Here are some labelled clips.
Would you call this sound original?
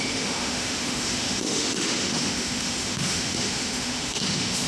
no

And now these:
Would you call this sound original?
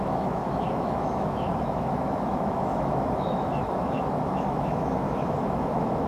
no